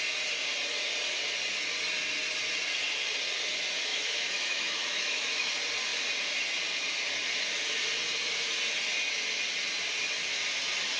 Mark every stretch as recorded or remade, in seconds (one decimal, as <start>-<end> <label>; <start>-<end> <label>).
0.0-3.9 recorded; 3.9-5.5 remade; 5.5-11.0 recorded